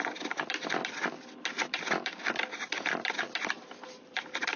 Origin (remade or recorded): recorded